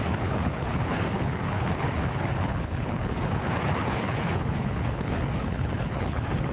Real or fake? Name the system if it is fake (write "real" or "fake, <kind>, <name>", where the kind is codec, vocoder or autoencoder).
fake, codec, HILCodec